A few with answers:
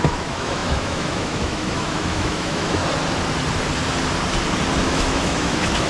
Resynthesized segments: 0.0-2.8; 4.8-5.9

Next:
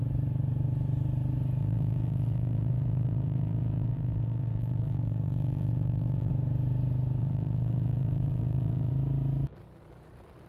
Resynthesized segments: 1.6-6.3; 7.2-8.9